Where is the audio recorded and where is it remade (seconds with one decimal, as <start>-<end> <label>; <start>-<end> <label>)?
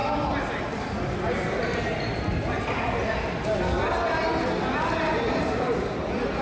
0.0-6.4 recorded